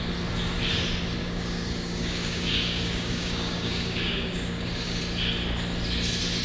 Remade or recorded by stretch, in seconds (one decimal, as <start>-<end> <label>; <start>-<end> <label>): 0.0-1.2 recorded; 1.2-5.0 remade; 5.0-6.4 recorded